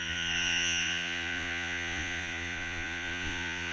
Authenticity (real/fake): fake